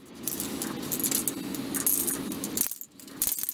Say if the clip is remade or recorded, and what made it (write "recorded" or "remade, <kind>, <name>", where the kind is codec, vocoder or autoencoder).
recorded